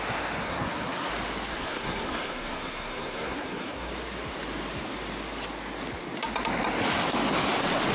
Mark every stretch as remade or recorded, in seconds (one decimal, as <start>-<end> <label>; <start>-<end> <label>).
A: 0.0-0.4 recorded; 0.4-1.1 remade; 1.1-1.5 recorded; 1.5-3.9 remade; 3.9-7.9 recorded